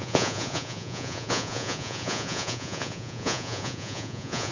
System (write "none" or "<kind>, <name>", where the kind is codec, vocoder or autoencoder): vocoder, Vocos